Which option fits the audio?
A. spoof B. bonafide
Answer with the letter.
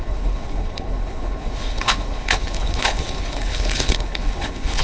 A